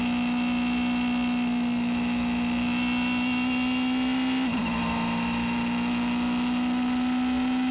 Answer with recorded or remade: recorded